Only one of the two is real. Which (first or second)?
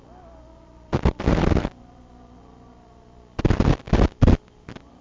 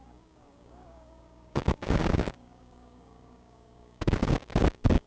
first